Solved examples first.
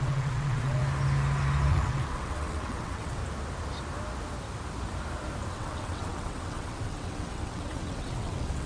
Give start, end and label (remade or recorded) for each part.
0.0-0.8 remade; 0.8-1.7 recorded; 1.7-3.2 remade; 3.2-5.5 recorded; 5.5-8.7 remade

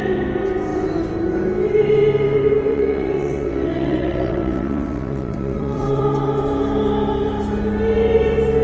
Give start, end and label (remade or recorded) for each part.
0.0-2.7 recorded; 2.7-6.0 remade; 6.0-8.6 recorded

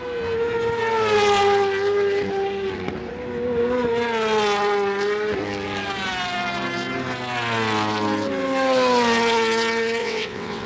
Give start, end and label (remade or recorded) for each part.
0.0-10.0 recorded; 10.0-10.7 remade